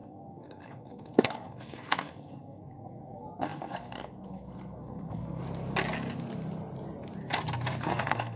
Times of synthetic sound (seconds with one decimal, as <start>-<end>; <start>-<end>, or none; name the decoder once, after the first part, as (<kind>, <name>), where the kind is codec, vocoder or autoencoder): 0.0-5.4 (codec, SNAC); 7.8-8.4